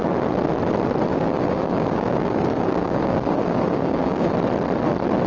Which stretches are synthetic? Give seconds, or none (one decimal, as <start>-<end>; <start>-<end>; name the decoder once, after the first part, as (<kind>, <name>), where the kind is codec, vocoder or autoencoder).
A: 1.1-4.3 (codec, DAC)